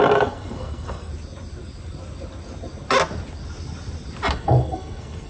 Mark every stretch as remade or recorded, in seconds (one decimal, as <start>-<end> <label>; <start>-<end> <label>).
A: 0.0-1.1 remade; 1.1-4.3 recorded; 4.3-5.3 remade